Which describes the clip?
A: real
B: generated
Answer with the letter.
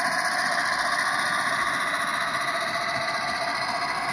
A